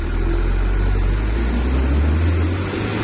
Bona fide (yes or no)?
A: yes